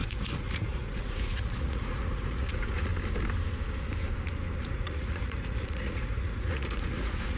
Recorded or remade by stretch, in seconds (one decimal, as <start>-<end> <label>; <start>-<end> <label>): 0.0-2.9 remade; 2.9-4.6 recorded; 4.6-7.4 remade